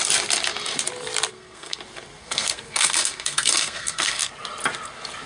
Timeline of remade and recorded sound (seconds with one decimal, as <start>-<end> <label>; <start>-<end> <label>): 0.0-1.3 recorded; 1.3-1.8 remade; 1.8-2.2 recorded; 2.2-4.3 remade; 4.3-5.3 recorded